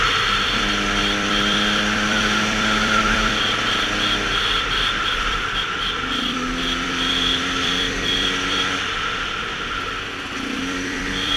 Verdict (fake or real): fake